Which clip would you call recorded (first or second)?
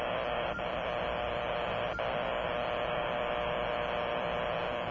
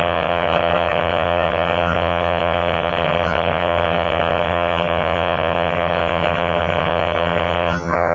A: first